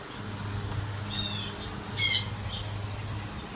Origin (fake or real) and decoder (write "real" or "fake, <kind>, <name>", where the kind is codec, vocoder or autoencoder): real